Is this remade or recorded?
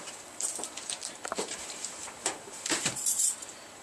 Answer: remade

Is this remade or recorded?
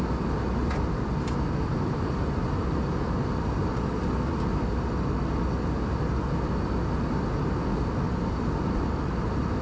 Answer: recorded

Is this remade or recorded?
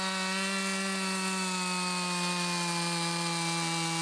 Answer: recorded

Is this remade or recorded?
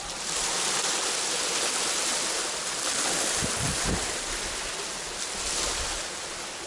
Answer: recorded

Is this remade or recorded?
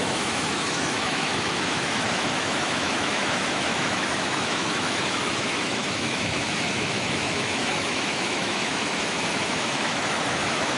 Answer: remade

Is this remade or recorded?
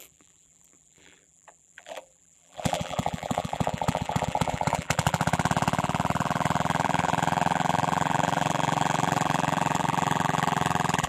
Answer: remade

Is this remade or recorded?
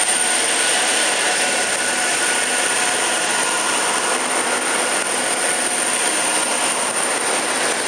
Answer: recorded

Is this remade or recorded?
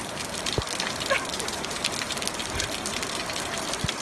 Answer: remade